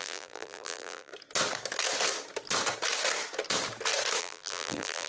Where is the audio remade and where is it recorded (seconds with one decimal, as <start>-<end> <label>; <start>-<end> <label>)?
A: 0.0-1.1 remade; 1.1-4.2 recorded; 4.2-5.1 remade